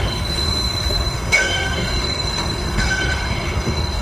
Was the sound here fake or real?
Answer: fake